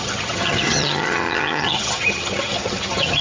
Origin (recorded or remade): remade